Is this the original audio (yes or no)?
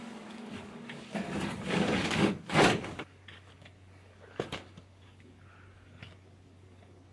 no